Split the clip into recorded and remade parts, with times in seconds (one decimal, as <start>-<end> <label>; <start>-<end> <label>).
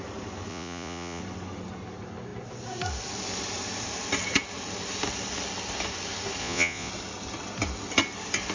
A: 0.0-0.5 recorded; 0.5-1.2 remade; 1.2-6.4 recorded; 6.4-6.9 remade; 6.9-8.5 recorded